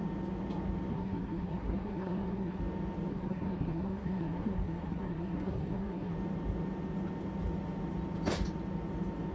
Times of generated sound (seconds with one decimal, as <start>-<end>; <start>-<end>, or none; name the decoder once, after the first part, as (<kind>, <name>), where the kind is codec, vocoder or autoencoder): 0.9-2.6 (codec, SNAC); 3.1-6.1